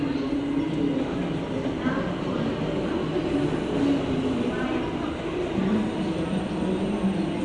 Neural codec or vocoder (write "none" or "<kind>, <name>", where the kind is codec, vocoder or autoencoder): none